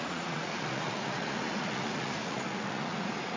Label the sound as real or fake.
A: fake